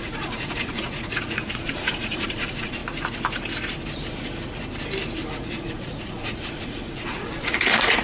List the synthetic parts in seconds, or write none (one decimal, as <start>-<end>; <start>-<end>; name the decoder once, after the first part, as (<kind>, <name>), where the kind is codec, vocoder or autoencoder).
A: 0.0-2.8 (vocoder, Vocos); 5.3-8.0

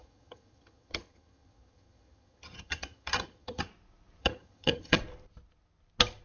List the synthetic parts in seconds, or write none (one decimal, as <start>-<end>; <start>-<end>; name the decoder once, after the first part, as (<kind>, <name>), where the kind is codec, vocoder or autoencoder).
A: 0.0-3.7 (vocoder, HiFi-GAN); 4.2-5.0

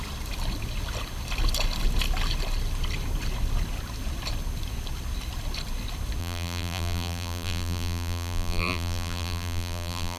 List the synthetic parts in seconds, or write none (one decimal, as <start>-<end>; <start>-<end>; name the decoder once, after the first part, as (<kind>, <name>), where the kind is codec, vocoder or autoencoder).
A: 6.2-10.2 (vocoder, BigVGAN v2)

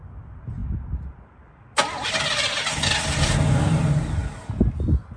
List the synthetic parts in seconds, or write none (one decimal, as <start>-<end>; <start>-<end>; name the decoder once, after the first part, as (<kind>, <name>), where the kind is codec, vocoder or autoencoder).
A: none